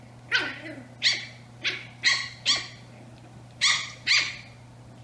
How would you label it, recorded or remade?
recorded